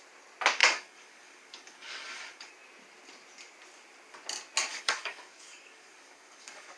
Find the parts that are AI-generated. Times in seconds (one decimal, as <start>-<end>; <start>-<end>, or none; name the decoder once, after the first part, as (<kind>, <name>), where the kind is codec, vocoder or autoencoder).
0.6-2.5 (codec, DAC); 4.7-6.8